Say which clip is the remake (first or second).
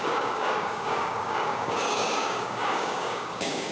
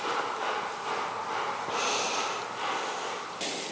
first